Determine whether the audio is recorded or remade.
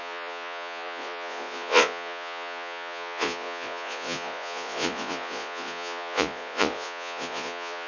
remade